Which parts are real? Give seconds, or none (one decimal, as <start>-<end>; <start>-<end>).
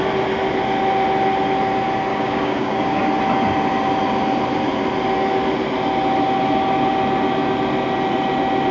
0.0-2.1; 3.0-8.7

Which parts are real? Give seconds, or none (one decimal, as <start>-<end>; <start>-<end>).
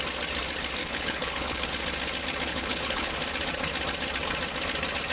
0.0-0.8; 1.7-2.5; 3.1-5.1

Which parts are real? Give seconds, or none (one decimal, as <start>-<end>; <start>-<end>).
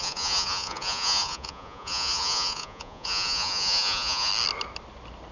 4.3-5.3